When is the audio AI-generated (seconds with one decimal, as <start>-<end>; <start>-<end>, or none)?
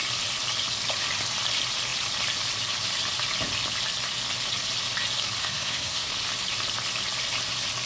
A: 5.4-6.1